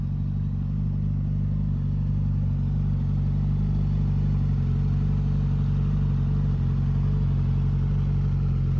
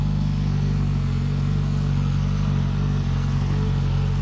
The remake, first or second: second